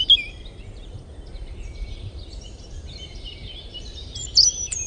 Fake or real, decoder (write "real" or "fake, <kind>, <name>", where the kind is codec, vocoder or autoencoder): fake, vocoder, BigVGAN v2